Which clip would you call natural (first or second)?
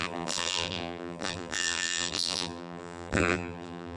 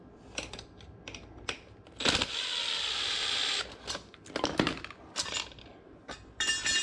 second